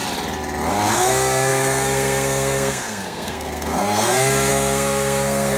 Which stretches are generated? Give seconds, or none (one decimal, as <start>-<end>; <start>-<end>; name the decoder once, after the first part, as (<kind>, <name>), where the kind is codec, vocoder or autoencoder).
0.7-5.6 (codec, SNAC)